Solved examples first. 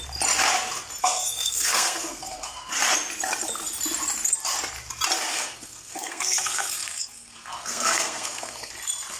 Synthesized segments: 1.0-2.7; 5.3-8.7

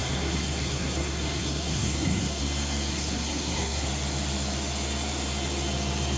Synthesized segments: 0.0-2.4; 2.9-3.9

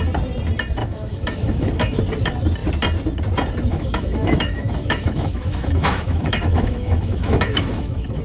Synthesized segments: 0.8-2.0; 3.7-8.2

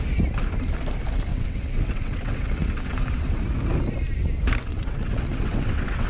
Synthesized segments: 1.3-3.4; 4.7-6.1

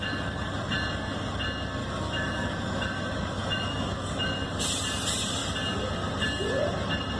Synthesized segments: 1.8-4.3

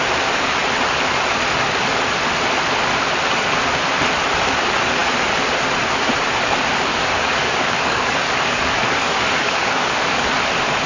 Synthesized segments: 6.9-10.3